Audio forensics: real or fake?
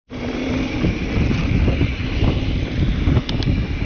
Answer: real